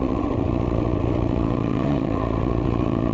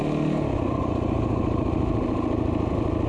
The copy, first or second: first